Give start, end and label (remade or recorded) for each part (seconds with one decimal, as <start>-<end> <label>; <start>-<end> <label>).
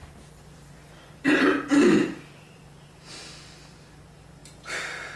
0.0-3.1 remade; 3.1-5.2 recorded